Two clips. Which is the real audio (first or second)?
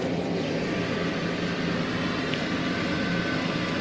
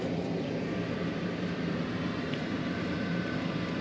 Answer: first